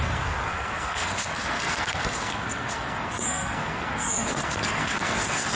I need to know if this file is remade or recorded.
remade